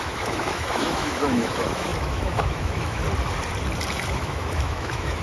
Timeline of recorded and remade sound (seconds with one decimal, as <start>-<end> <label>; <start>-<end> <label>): 0.0-3.0 remade; 3.0-4.1 recorded; 4.1-5.2 remade